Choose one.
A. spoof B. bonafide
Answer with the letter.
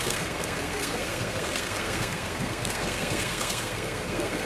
A